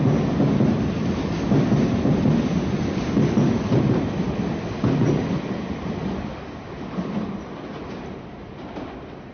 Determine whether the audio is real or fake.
real